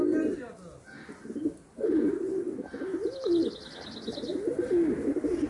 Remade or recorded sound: recorded